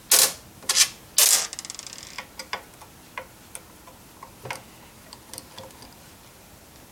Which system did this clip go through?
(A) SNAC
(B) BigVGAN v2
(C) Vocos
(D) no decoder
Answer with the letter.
D